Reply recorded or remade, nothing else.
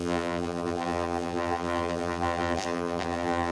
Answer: remade